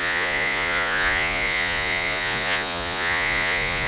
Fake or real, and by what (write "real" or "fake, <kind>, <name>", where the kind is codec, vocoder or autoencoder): fake, vocoder, Vocos